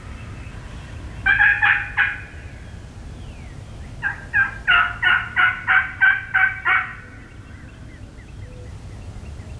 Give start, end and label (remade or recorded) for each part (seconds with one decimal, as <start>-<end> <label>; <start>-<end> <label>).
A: 0.0-9.6 recorded